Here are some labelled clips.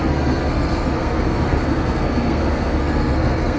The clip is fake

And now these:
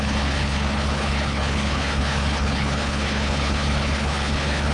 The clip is fake